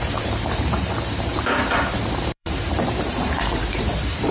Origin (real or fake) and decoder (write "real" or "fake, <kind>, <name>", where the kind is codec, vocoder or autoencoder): fake, vocoder, BigVGAN v2